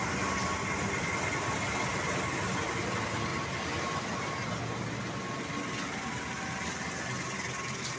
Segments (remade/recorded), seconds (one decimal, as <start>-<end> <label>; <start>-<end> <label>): 0.0-3.3 recorded; 3.3-4.1 remade; 4.1-8.0 recorded